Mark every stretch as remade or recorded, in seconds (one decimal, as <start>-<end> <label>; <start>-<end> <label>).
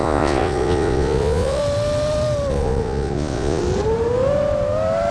0.0-1.6 remade; 1.6-2.5 recorded; 2.5-3.6 remade; 3.6-5.1 recorded